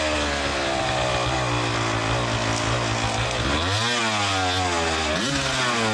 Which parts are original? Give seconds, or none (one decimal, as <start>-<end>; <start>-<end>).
0.0-5.9